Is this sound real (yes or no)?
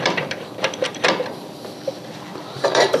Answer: no